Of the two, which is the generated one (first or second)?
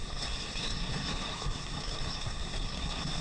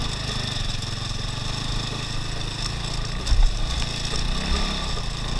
first